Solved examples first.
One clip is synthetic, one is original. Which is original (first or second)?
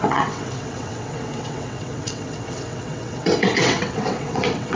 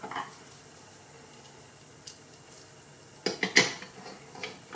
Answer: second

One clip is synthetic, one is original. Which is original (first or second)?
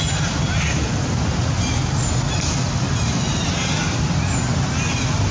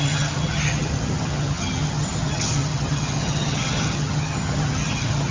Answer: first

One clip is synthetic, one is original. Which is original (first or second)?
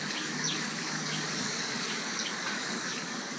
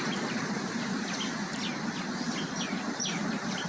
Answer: second